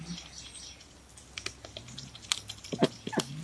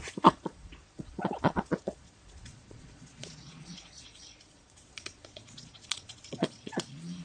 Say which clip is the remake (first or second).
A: second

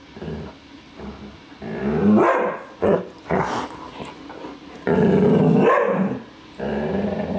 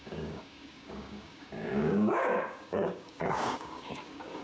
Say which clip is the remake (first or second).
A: second